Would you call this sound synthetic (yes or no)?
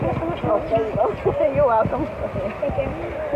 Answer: no